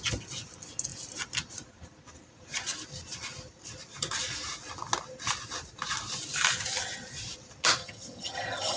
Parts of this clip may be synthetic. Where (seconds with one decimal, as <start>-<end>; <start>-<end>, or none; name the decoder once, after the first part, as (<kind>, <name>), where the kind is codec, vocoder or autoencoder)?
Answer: 7.8-8.8 (vocoder, HiFi-GAN)